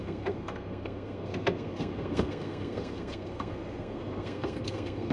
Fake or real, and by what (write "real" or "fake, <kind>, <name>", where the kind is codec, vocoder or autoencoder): fake, codec, SNAC